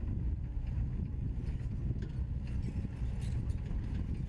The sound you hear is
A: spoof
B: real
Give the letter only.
B